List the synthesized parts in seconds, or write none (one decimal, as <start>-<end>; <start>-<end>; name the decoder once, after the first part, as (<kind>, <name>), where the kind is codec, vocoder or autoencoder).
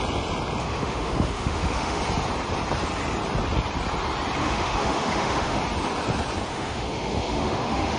0.6-2.0 (autoencoder, DAC-VAE); 4.4-5.6; 6.5-8.0